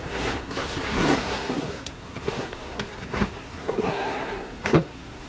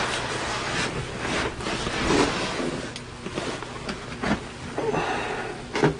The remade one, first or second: first